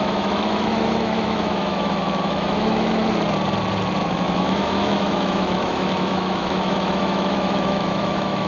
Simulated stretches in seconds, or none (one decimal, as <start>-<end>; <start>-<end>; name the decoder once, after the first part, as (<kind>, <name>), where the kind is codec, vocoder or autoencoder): 0.0-3.0 (autoencoder, DAC-VAE); 4.0-8.5